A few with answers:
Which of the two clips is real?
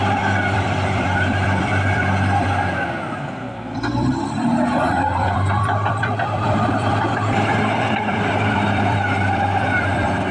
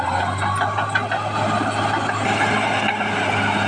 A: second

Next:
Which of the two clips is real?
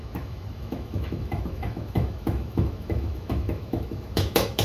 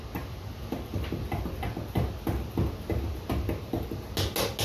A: second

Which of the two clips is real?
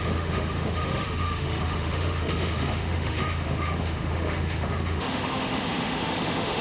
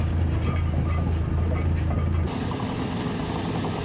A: second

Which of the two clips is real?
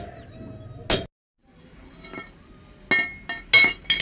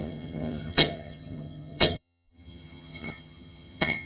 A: first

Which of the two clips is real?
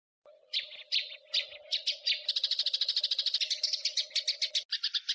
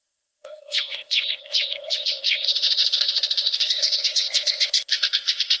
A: first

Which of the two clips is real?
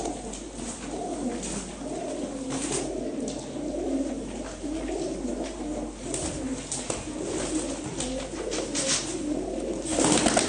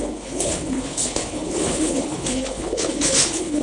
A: first